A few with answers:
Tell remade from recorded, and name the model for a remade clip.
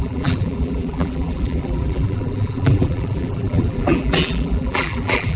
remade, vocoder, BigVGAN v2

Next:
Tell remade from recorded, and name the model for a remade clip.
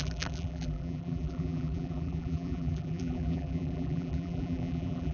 remade, vocoder, BigVGAN v2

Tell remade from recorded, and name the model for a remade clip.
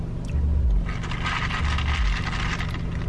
recorded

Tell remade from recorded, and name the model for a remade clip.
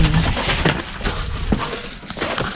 recorded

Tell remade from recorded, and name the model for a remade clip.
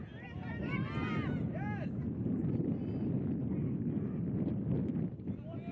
recorded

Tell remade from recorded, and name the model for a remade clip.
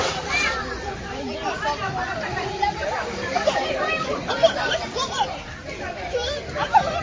remade, vocoder, BigVGAN v2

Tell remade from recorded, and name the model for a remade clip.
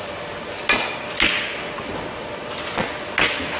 recorded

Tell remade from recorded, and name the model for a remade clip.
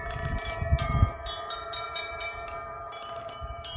remade, vocoder, BigVGAN v2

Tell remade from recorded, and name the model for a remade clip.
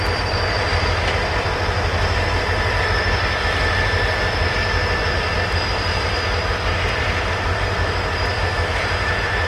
remade, vocoder, BigVGAN v2